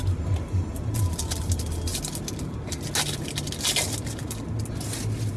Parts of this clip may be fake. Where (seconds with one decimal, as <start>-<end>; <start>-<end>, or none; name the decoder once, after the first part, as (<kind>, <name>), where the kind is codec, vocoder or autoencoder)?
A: none